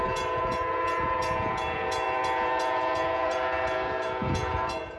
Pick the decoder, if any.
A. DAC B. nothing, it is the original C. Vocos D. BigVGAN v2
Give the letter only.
C